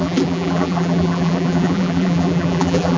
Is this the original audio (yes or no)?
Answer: no